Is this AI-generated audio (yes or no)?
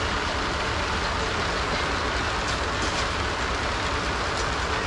no